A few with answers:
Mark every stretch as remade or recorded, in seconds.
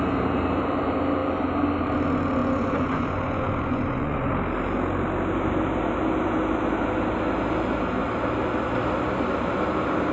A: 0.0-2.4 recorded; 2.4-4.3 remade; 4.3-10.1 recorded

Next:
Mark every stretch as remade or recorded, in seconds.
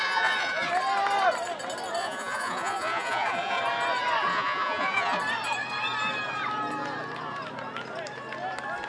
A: 0.0-0.7 remade; 0.7-2.0 recorded; 2.0-3.6 remade; 3.6-4.3 recorded; 4.3-5.2 remade; 5.2-8.9 recorded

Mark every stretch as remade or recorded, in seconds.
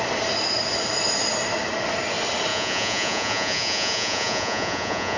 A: 0.0-2.5 recorded; 2.5-5.2 remade